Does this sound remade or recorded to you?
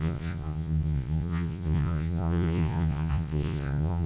remade